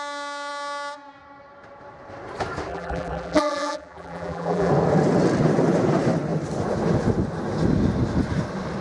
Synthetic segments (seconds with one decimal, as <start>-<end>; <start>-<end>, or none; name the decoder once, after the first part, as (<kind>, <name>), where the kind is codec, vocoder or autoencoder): 2.7-4.7 (vocoder, BigVGAN v2)